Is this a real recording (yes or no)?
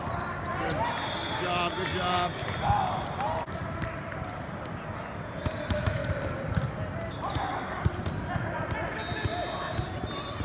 yes